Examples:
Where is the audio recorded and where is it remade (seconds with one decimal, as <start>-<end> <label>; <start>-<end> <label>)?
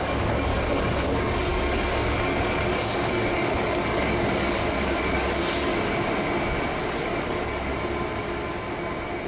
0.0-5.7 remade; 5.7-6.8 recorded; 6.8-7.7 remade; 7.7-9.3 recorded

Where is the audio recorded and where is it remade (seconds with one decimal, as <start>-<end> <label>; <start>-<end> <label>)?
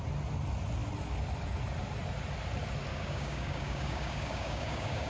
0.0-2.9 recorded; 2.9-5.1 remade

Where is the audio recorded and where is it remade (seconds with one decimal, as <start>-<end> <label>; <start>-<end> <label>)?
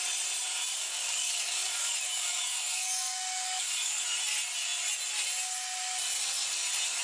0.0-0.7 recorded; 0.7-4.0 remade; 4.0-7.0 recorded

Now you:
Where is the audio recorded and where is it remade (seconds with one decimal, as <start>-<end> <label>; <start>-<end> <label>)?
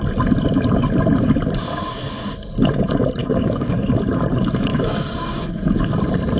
0.0-3.2 recorded; 3.2-3.8 remade; 3.8-4.7 recorded; 4.7-5.9 remade; 5.9-6.4 recorded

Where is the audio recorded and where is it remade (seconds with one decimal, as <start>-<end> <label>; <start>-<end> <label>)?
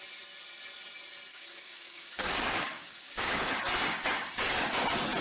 0.0-1.3 recorded; 1.3-4.4 remade; 4.4-5.2 recorded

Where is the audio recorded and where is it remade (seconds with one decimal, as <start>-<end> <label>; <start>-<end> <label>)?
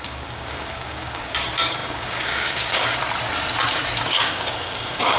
0.0-3.0 remade; 3.0-4.0 recorded; 4.0-5.2 remade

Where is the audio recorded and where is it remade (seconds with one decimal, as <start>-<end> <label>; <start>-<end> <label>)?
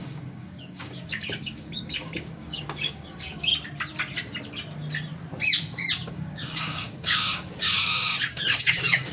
0.0-3.5 remade; 3.5-6.1 recorded; 6.1-9.1 remade